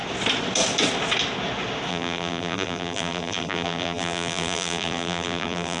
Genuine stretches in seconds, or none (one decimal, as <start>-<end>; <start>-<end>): 0.0-1.9